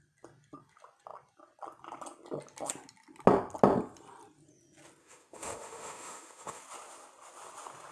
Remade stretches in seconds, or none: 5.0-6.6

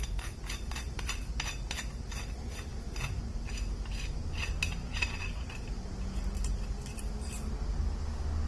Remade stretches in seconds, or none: none